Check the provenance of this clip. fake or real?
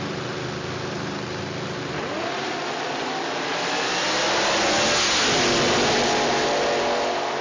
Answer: real